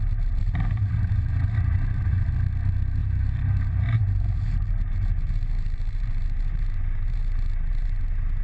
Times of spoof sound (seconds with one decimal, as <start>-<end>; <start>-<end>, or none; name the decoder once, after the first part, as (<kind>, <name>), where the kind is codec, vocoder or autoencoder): 0.4-2.3 (vocoder, BigVGAN v2); 3.0-8.0